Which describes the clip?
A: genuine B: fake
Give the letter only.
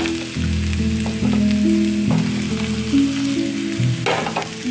A